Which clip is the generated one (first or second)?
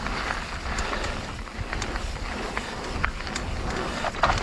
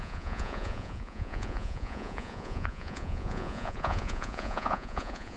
second